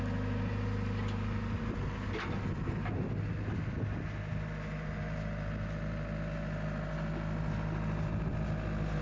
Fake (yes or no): no